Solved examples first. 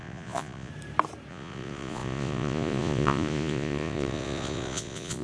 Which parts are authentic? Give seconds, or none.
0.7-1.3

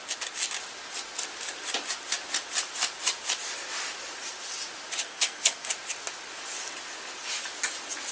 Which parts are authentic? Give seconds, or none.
0.0-5.0; 5.7-8.1

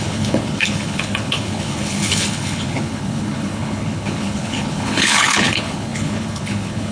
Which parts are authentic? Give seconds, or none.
none